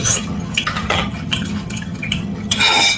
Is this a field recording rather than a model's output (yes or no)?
no